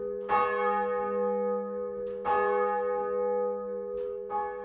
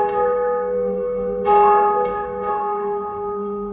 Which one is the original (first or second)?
first